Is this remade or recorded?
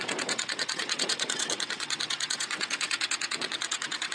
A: remade